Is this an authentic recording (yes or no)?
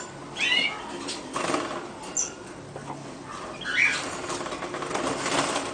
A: yes